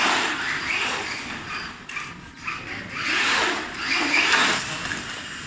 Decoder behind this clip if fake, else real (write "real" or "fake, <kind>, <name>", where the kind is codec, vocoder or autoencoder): real